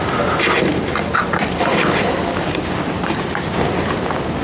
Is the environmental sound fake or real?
real